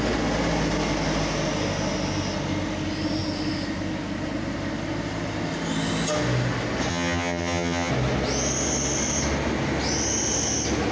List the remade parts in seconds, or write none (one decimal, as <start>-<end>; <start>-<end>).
6.9-7.9